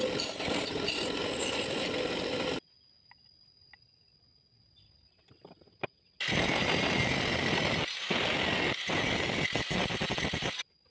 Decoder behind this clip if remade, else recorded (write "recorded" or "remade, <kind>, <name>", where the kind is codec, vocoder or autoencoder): recorded